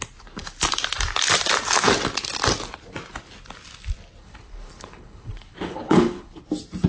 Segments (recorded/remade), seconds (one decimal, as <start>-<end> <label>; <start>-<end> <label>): 0.0-4.2 recorded; 4.2-6.4 remade; 6.4-6.9 recorded